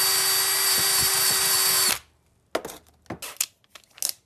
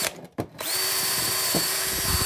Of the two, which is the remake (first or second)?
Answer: second